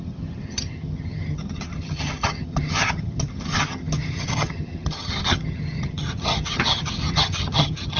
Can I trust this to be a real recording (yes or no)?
no